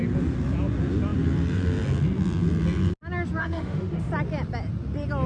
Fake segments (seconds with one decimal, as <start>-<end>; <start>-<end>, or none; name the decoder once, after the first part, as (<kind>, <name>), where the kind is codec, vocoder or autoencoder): 3.4-4.1 (autoencoder, DAC-VAE)